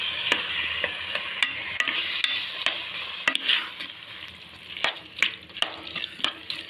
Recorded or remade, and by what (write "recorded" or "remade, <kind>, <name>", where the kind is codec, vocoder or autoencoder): recorded